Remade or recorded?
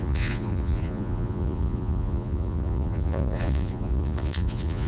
remade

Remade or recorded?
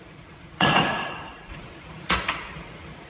remade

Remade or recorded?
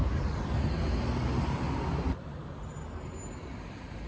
recorded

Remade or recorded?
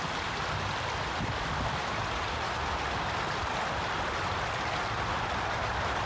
recorded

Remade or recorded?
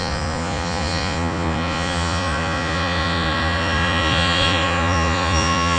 remade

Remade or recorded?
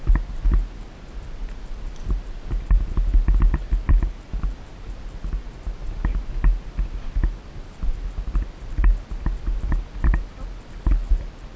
recorded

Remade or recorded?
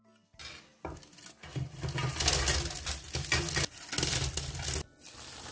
recorded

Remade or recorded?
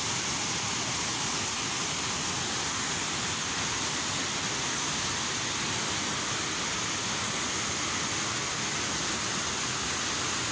recorded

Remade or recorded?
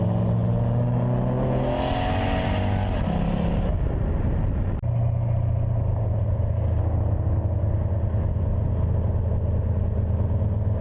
recorded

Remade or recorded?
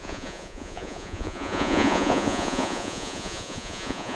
remade